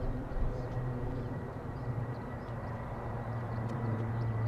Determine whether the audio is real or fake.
fake